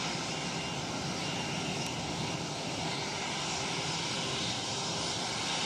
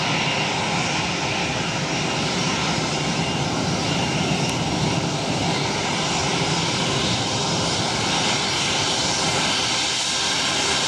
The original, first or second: first